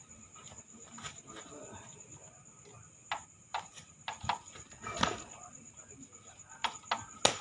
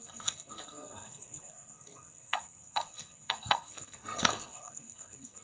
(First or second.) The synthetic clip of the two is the second